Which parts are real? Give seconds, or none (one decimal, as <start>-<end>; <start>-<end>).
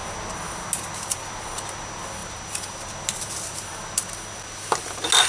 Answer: 0.0-5.3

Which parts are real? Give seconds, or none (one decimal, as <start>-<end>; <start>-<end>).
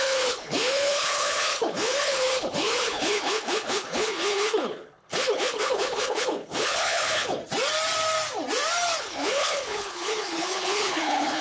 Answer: 7.4-9.0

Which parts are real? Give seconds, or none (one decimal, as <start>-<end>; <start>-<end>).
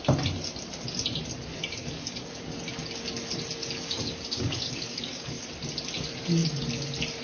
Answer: 0.0-1.8; 2.4-3.6; 5.5-7.2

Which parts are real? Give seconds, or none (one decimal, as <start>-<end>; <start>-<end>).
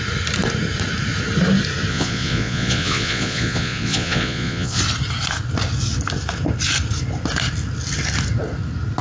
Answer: 0.0-1.9; 4.8-9.0